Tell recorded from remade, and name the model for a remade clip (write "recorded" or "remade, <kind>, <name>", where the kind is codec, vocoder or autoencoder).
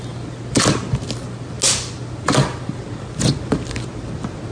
recorded